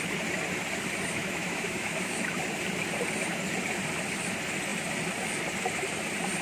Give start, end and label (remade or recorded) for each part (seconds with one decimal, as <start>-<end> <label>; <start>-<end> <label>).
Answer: 0.0-1.2 recorded; 1.2-2.4 remade; 2.4-6.4 recorded